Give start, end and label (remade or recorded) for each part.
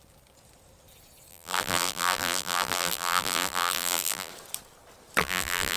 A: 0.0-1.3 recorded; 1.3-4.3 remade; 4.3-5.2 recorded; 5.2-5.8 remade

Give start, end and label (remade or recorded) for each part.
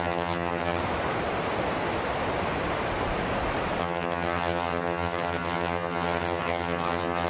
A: 0.0-0.8 remade; 0.8-3.8 recorded; 3.8-7.3 remade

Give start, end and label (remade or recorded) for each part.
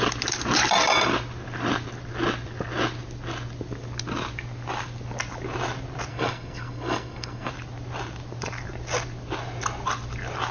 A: 0.0-6.1 recorded; 6.1-7.5 remade; 7.5-10.5 recorded